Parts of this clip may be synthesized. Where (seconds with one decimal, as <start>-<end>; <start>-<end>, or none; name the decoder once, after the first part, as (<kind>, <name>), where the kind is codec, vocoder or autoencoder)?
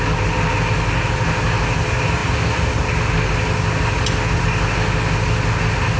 none